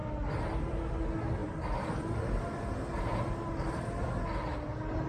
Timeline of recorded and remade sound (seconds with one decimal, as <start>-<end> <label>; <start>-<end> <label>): 0.0-5.1 recorded